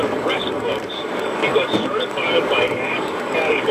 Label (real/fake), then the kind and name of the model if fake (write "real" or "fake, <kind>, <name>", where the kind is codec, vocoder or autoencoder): fake, codec, DAC